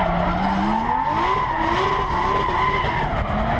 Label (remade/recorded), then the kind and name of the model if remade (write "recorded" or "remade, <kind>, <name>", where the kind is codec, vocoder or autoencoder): recorded